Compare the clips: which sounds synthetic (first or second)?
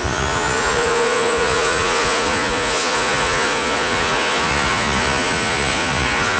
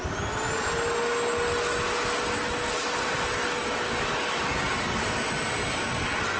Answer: first